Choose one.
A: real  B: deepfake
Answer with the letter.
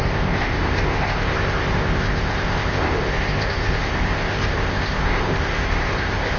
B